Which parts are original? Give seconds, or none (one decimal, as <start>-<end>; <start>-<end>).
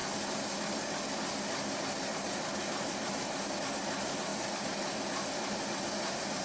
0.0-6.4